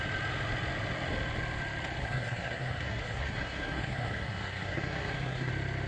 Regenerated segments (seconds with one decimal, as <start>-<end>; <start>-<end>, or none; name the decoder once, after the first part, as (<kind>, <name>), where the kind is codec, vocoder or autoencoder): 2.0-5.5 (codec, SNAC)